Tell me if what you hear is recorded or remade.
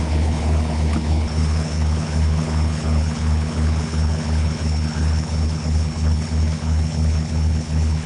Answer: remade